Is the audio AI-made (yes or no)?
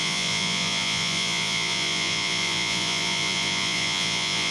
yes